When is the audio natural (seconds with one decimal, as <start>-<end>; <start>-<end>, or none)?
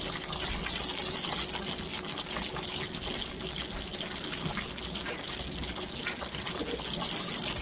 0.0-7.6